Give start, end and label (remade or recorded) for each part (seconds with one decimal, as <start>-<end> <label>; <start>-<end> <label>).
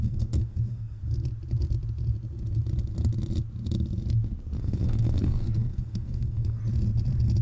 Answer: 0.0-1.0 remade; 1.0-4.6 recorded; 4.6-6.6 remade; 6.6-7.4 recorded